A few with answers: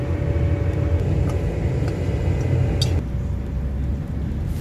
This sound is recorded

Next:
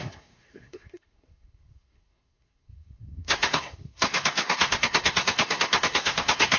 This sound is remade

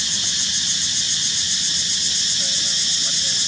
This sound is recorded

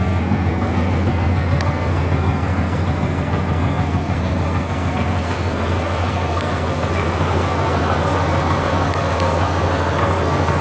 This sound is remade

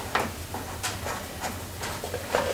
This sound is recorded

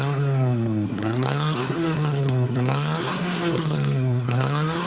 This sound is remade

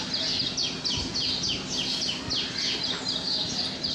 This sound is recorded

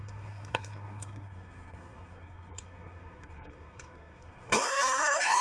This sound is remade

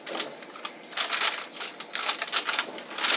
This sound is recorded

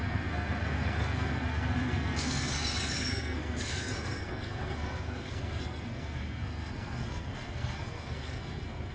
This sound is remade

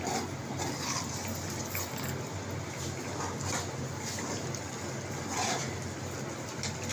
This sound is recorded